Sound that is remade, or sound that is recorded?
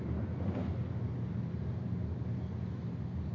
recorded